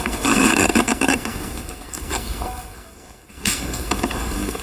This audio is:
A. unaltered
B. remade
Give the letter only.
B